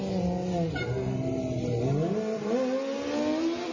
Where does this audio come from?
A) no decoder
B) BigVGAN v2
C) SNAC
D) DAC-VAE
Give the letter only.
A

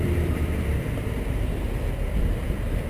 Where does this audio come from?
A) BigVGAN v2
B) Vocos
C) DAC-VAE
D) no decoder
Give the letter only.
A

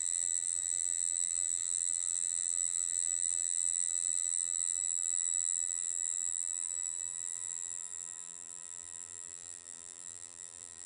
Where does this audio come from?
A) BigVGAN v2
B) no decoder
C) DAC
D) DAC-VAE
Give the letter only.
A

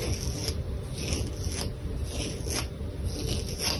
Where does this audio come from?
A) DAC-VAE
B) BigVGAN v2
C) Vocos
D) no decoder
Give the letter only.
D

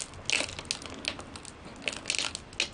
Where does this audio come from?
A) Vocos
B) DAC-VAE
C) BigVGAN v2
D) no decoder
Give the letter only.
D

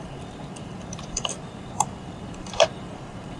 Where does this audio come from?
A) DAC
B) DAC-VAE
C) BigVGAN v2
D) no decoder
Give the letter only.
C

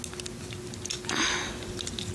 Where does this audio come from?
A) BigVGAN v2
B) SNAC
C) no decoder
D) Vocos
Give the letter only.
C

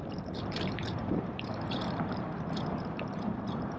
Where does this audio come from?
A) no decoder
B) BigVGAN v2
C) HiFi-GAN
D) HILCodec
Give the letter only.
B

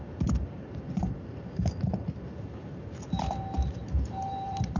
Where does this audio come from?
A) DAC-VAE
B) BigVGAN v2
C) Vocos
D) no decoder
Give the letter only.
B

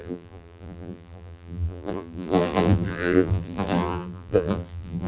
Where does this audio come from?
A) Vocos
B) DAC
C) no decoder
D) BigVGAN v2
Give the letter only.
D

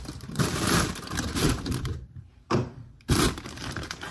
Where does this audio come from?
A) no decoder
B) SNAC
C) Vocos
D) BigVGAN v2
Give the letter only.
D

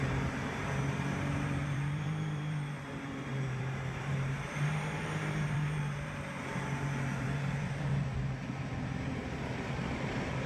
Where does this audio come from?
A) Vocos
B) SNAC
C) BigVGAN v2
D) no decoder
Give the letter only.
C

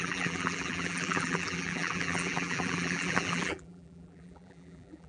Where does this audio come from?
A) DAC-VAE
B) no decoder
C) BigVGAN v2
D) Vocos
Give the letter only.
C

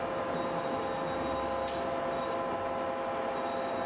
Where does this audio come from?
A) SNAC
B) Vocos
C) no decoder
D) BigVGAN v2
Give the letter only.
C